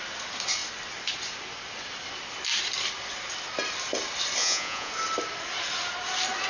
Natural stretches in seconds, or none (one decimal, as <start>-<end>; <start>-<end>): 0.0-4.4; 4.9-6.5